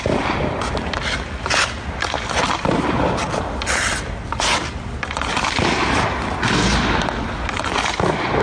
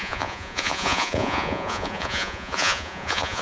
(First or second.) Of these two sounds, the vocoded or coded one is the second